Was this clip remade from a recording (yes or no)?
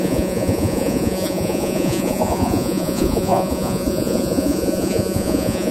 yes